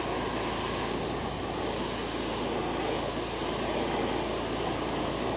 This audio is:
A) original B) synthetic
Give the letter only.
A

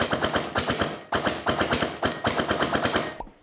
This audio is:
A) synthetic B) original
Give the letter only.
B